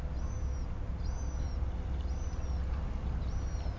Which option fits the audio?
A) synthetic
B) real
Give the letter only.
B